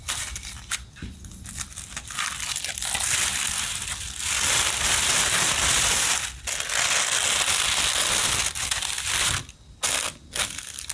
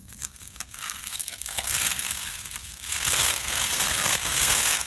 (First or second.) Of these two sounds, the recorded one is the first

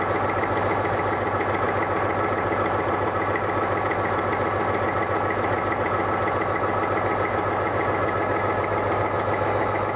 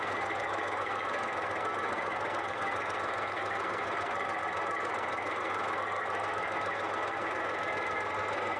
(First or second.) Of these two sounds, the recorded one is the first